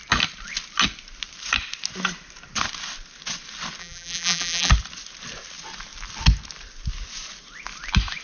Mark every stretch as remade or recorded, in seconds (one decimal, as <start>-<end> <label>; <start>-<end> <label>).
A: 0.0-3.8 recorded; 3.8-4.7 remade; 4.7-8.2 recorded